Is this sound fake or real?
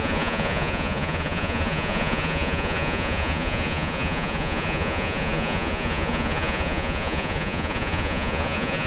fake